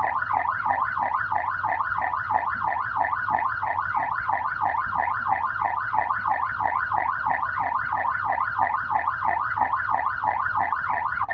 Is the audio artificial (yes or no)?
yes